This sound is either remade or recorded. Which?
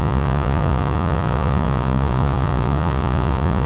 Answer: remade